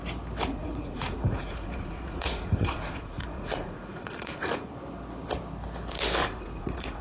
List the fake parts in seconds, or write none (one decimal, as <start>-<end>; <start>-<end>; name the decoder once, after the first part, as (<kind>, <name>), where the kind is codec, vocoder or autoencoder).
0.5-4.7 (vocoder, Vocos); 6.2-7.0